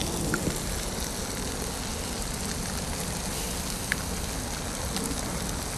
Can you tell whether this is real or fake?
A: real